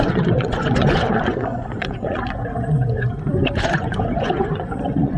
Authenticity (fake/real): fake